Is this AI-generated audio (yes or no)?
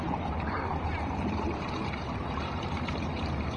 yes